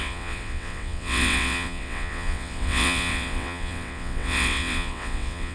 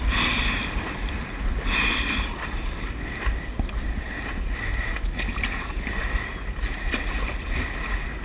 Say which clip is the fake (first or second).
first